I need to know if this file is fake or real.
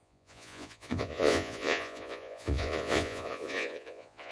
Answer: fake